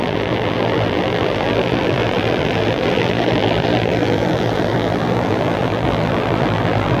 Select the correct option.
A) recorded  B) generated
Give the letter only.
B